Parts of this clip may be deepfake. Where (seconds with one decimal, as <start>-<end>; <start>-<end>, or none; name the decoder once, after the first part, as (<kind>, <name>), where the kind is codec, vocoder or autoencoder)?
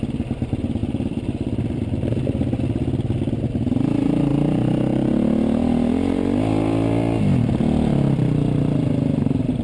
0.8-2.6 (vocoder, BigVGAN v2)